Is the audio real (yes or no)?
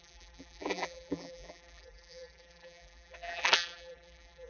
no